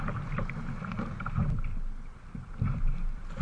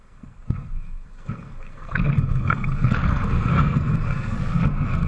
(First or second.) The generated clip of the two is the second